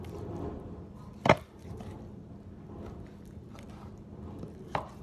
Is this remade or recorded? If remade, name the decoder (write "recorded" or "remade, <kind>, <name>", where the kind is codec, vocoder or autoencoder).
recorded